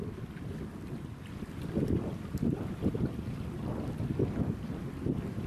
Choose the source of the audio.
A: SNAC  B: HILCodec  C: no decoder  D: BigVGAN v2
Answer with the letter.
D